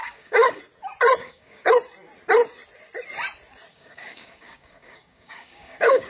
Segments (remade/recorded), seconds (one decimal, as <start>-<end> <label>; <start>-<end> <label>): 0.0-0.6 remade; 0.6-1.2 recorded; 1.2-1.7 remade; 1.7-3.7 recorded; 3.7-6.1 remade